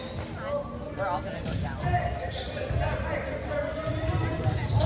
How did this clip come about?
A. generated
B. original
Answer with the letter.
B